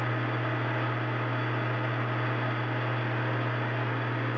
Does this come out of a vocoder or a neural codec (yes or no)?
no